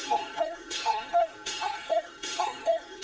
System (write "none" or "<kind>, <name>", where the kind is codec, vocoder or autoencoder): codec, SNAC